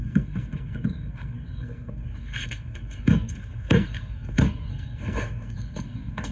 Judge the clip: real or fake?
fake